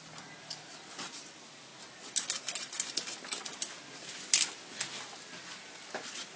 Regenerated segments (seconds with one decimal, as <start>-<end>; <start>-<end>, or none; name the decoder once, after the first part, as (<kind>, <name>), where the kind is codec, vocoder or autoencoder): 0.0-1.7 (vocoder, BigVGAN v2); 5.5-6.4